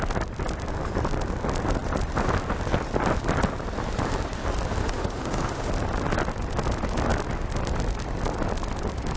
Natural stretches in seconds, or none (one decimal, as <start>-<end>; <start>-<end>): 0.0-4.8; 5.7-9.2